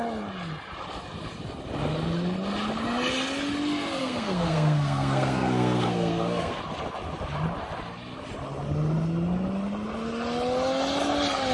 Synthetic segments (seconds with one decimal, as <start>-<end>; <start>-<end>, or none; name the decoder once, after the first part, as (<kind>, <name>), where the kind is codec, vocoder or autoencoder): 4.0-6.6 (codec, SNAC)